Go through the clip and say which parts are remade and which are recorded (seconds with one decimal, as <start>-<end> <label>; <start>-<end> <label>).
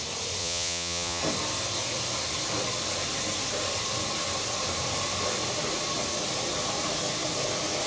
0.0-0.4 recorded; 0.4-1.2 remade; 1.2-7.9 recorded